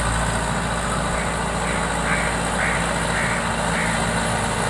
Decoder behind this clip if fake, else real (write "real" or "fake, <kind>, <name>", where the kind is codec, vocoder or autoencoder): real